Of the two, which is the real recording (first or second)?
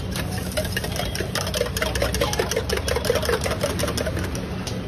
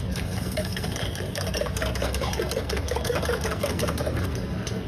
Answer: first